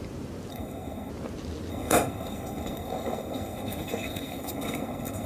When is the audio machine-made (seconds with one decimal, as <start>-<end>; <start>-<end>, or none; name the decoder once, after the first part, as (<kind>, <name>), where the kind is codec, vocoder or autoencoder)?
0.5-1.1 (codec, SNAC); 1.7-5.3